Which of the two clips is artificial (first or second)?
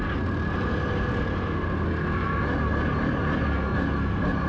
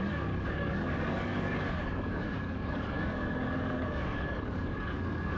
second